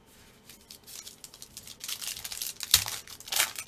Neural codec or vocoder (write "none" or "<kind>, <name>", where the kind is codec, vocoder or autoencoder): none